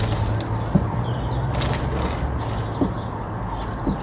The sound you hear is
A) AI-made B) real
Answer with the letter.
B